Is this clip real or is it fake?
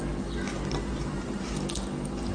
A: real